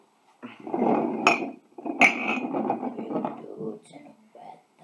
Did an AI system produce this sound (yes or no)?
no